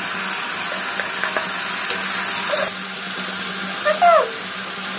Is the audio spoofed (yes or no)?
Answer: no